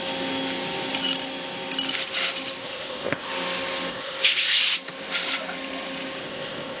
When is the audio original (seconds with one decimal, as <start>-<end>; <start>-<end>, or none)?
0.0-2.6; 3.3-3.9; 4.6-6.2